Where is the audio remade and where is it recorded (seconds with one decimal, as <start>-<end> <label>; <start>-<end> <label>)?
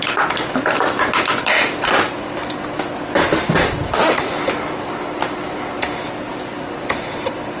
0.0-7.6 recorded